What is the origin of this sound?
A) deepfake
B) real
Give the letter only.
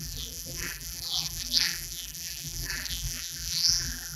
A